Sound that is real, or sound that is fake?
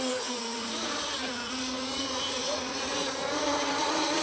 fake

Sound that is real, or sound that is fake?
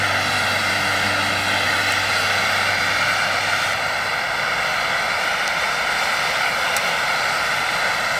real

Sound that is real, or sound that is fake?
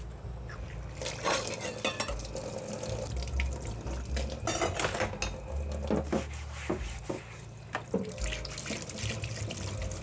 real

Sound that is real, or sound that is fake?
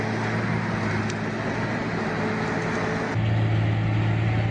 real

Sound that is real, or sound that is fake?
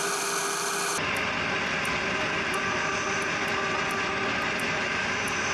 real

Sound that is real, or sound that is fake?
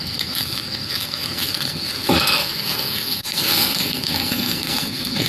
fake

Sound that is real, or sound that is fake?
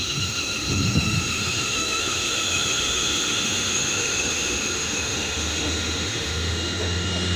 fake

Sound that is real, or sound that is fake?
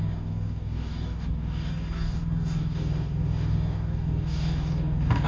fake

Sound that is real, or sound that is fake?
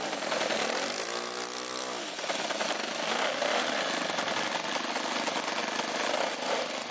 real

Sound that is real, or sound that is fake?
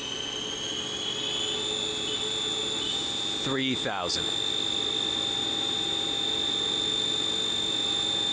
real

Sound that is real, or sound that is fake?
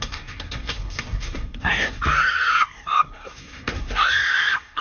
fake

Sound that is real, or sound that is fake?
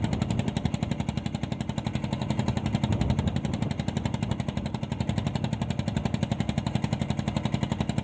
real